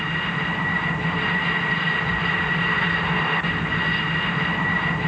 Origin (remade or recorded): recorded